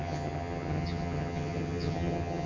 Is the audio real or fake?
fake